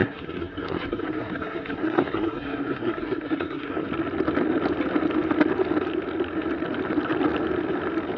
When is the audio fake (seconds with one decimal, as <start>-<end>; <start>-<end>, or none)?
0.0-3.9